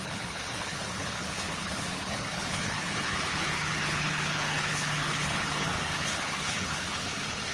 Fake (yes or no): yes